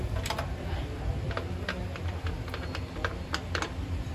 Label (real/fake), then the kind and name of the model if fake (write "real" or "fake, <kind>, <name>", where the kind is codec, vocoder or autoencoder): real